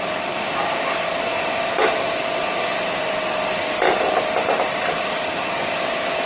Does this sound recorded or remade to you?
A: remade